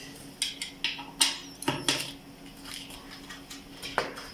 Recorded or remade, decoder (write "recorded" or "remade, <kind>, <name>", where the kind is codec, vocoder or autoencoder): recorded